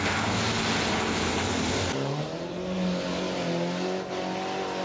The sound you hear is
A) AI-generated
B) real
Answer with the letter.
B